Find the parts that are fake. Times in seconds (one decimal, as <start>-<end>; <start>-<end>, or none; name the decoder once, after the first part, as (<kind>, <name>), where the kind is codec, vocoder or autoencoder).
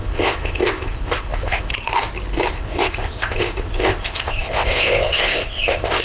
0.0-1.7 (codec, ZipCodec); 2.5-6.0